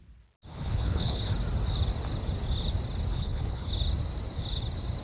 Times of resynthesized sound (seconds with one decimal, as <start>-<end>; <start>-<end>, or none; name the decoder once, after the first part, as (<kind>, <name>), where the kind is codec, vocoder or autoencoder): 0.5-1.3 (codec, HILCodec); 3.1-3.7